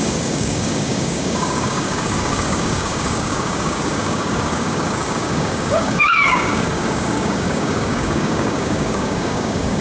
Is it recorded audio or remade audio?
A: remade